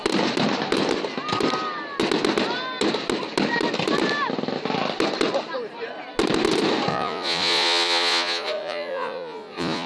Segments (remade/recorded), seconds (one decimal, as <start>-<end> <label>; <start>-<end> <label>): 0.0-6.9 recorded; 6.9-9.9 remade